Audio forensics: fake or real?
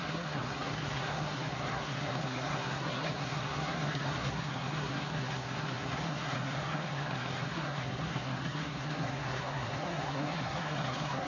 fake